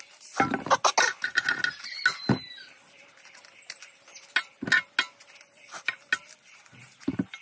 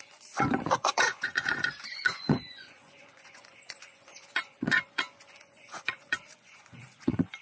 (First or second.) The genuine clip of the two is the first